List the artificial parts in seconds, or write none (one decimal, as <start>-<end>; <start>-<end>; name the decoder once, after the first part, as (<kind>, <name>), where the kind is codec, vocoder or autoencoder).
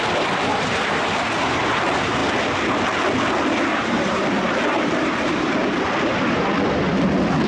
0.5-1.1 (vocoder, BigVGAN v2); 3.7-6.1